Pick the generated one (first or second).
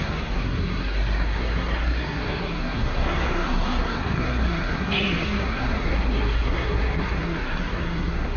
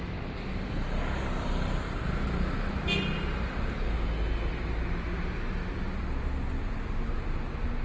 first